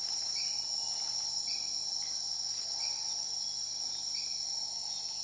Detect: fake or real real